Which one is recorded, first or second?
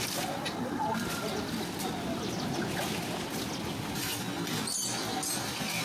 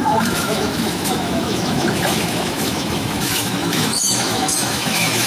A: first